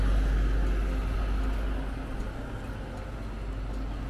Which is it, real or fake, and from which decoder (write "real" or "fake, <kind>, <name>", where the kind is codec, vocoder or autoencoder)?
real